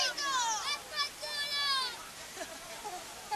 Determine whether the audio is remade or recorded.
recorded